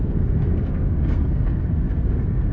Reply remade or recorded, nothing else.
remade